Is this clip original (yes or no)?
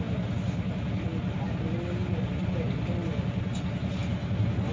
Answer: yes